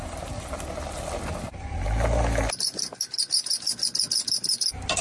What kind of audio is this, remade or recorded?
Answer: recorded